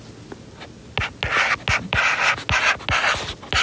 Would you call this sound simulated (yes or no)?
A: no